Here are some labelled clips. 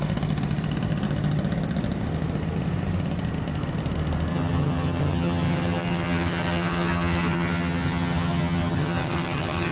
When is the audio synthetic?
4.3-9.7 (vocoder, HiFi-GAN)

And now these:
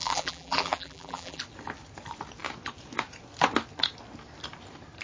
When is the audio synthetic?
0.0-1.4 (vocoder, BigVGAN v2)